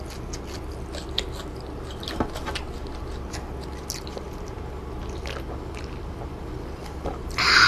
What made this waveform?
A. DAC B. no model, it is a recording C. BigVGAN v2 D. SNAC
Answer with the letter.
B